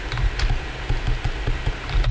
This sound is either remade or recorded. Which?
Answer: remade